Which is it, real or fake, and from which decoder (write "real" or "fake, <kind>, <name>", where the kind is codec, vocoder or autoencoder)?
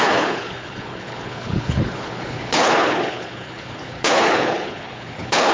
fake, codec, HILCodec